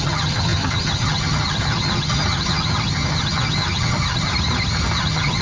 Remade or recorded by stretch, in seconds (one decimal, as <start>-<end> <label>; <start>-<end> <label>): 0.0-4.3 remade; 4.3-5.0 recorded; 5.0-5.4 remade